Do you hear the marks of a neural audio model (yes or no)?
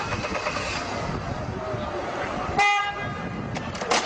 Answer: no